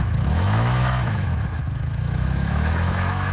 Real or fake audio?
fake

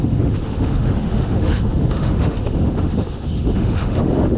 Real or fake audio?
fake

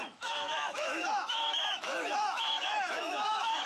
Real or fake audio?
fake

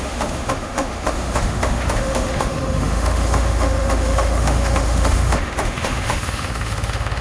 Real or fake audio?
fake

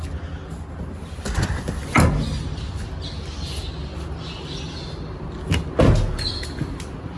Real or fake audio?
real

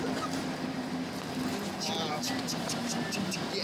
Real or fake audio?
real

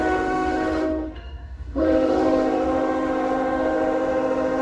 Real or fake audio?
fake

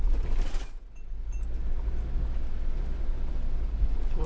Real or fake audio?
real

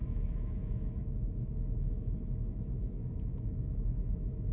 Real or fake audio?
fake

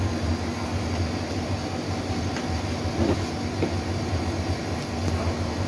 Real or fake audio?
real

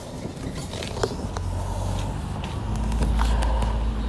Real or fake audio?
real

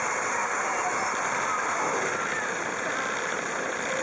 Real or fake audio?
real